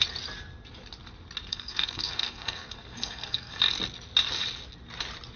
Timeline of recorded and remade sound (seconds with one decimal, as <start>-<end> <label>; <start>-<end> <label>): 0.0-1.5 recorded; 1.5-3.6 remade; 3.6-5.4 recorded